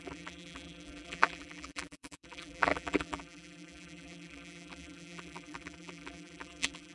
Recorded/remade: remade